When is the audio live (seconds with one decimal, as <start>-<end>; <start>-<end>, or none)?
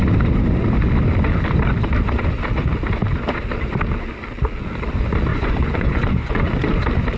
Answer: 0.0-5.3; 6.5-7.2